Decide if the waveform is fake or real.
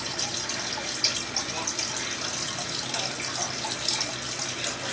real